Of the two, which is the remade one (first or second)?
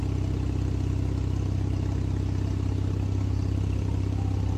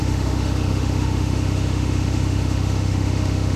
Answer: second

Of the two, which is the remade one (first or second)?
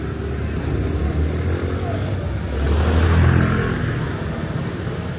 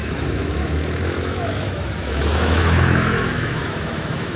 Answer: second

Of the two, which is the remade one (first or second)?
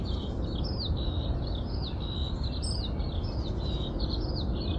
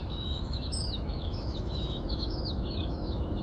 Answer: second